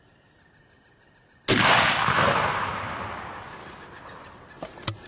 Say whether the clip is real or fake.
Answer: real